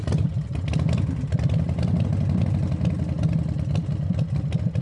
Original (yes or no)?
yes